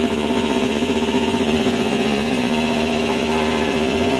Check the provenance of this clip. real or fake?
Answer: fake